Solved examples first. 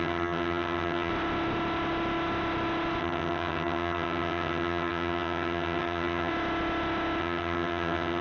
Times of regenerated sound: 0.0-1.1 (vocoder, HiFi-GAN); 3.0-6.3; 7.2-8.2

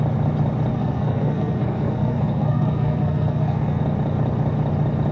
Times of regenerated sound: 0.7-3.8 (codec, SNAC)

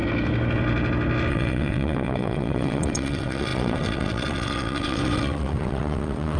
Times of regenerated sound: 1.3-6.4 (vocoder, WaveNeXt)

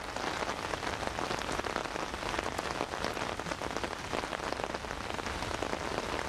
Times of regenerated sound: none

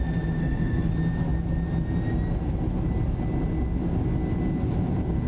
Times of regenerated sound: 0.4-0.9 (codec, SNAC)

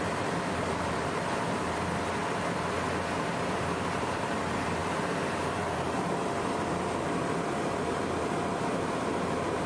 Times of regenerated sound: 0.0-2.2 (vocoder, BigVGAN v2); 3.4-9.7